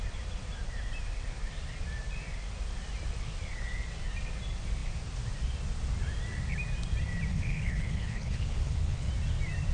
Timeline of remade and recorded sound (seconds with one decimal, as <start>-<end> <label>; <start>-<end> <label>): 0.0-7.3 recorded; 7.3-9.1 remade; 9.1-9.7 recorded